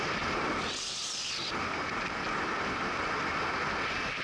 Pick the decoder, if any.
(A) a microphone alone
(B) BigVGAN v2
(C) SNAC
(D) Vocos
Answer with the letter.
A